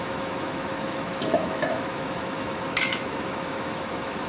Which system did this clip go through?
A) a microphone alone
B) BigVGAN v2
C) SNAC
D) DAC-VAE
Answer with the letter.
D